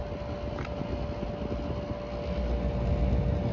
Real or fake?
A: real